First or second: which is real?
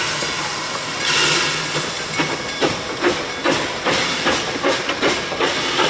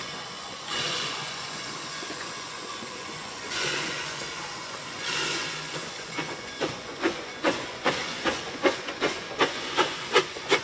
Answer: first